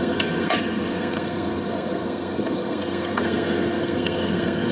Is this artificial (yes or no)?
yes